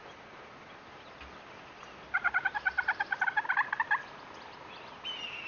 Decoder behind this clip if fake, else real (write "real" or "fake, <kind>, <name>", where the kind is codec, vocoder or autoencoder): real